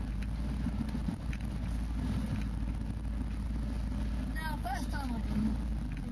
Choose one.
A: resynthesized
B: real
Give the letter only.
B